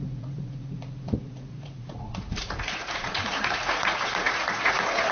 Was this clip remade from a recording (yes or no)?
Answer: yes